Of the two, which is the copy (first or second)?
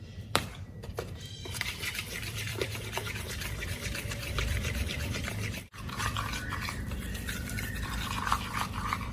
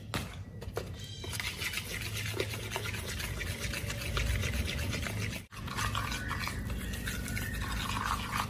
first